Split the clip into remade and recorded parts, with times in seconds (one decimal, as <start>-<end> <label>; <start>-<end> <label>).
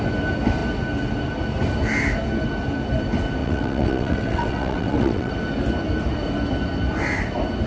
0.0-3.4 recorded; 3.4-5.3 remade; 5.3-7.7 recorded